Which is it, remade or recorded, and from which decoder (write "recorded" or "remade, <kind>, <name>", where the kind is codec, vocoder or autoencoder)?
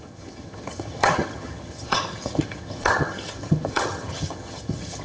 remade, vocoder, HiFi-GAN